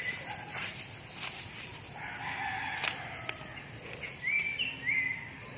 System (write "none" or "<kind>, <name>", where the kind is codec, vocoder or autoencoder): none